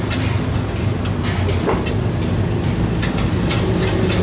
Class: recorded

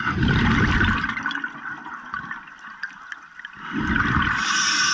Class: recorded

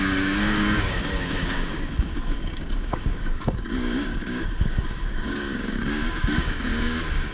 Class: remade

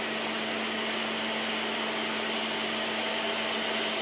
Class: recorded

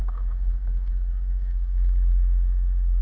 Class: remade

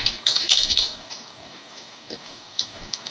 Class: remade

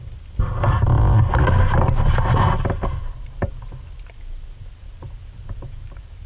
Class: recorded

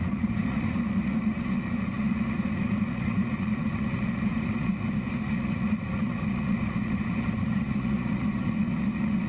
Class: remade